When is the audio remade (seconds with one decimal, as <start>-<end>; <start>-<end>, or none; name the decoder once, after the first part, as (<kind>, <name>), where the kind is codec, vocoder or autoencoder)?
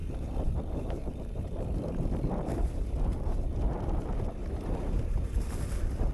0.0-3.7 (vocoder, BigVGAN v2); 4.4-5.5